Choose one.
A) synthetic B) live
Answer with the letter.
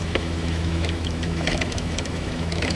A